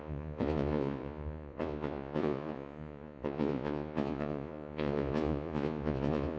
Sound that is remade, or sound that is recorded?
remade